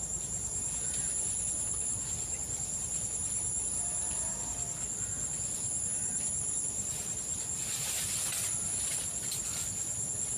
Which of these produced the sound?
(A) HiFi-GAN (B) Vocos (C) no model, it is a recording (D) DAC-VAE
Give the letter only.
C